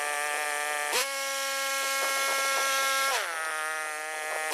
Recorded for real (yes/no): yes